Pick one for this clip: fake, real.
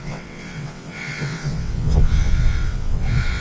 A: fake